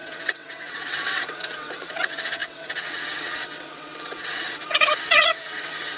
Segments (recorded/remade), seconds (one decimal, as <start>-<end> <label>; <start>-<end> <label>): 0.0-6.0 remade